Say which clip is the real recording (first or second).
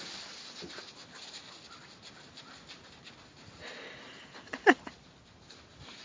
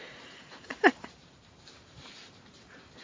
first